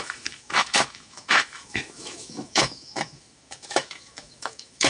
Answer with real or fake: fake